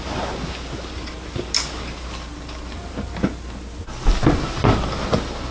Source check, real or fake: real